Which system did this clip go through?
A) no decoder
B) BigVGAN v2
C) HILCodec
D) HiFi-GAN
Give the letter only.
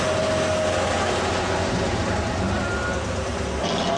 A